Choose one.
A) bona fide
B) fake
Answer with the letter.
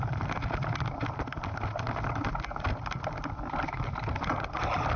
A